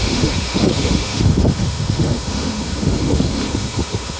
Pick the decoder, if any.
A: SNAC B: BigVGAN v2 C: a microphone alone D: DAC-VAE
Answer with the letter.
D